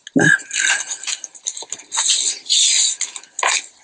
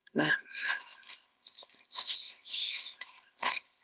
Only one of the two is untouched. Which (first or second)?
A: first